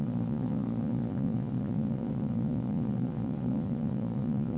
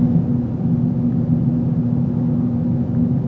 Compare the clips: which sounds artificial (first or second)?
first